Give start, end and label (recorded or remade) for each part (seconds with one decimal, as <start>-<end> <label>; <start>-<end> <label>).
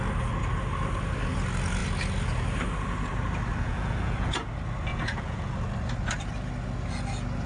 0.0-3.5 recorded; 3.5-4.5 remade; 4.5-4.9 recorded; 4.9-5.5 remade; 5.5-7.5 recorded